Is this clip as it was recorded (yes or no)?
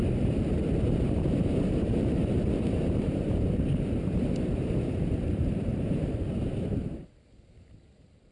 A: no